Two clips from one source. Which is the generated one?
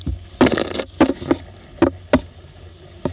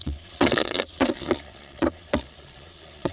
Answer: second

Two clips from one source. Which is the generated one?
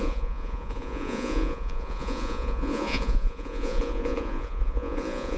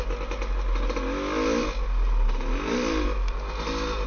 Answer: first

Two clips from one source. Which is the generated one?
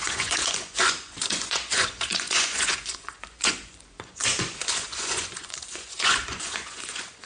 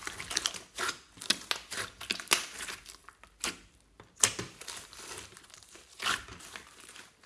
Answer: first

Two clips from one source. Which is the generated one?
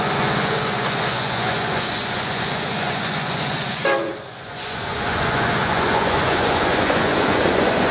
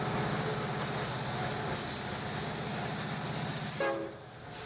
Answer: first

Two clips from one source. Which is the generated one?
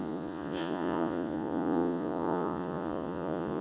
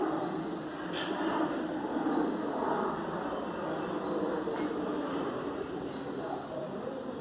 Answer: first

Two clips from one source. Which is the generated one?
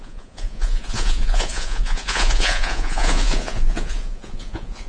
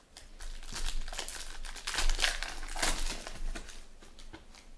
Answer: first